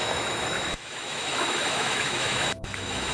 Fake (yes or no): yes